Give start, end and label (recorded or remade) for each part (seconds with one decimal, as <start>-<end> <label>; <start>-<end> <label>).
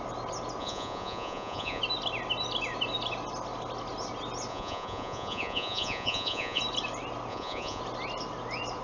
0.0-0.6 recorded; 0.6-1.8 remade; 1.8-4.5 recorded; 4.5-6.6 remade; 6.6-7.3 recorded; 7.3-7.8 remade; 7.8-8.8 recorded